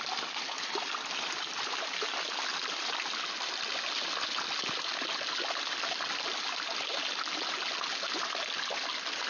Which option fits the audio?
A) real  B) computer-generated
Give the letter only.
A